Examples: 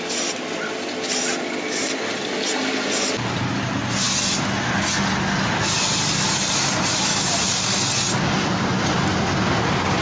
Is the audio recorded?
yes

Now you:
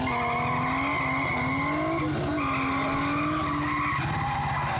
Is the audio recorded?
yes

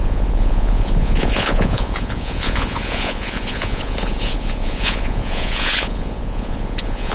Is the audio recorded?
no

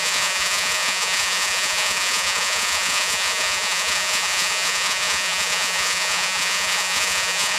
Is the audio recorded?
no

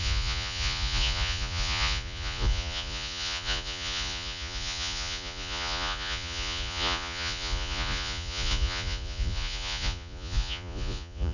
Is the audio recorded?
no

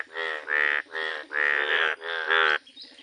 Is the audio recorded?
yes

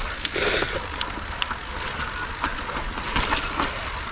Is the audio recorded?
yes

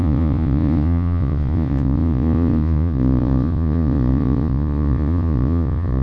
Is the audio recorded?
no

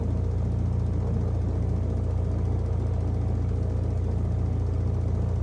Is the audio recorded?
yes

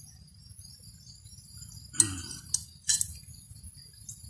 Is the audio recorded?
yes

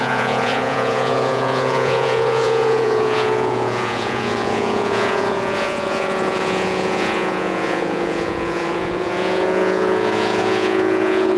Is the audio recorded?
no